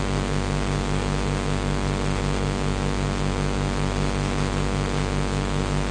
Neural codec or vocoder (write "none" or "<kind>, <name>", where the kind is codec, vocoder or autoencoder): none